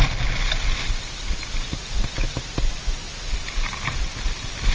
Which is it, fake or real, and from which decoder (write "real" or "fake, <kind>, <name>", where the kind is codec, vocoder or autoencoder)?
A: real